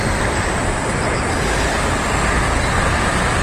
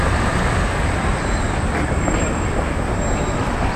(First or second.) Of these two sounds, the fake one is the second